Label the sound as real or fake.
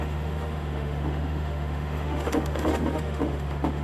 fake